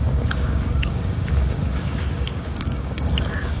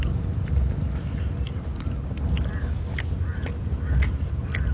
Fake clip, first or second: first